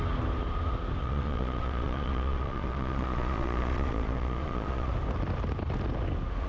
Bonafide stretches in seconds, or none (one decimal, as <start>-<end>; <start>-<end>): 0.0-1.0; 4.9-6.5